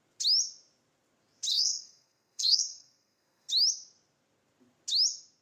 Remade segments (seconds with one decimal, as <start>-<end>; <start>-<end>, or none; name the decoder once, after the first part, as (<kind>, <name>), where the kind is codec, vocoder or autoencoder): 1.5-3.5 (codec, SNAC)